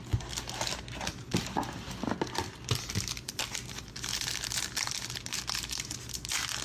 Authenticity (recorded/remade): recorded